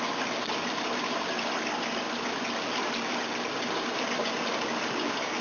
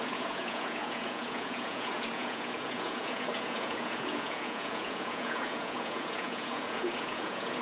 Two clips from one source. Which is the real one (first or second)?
first